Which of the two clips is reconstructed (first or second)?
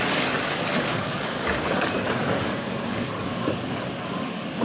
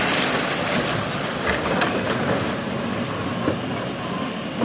first